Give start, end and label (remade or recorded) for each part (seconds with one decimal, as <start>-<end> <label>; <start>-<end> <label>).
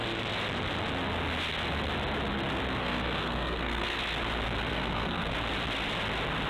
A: 0.0-2.8 recorded; 2.8-4.0 remade; 4.0-4.7 recorded; 4.7-5.3 remade; 5.3-6.5 recorded